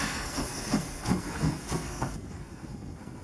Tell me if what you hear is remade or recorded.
remade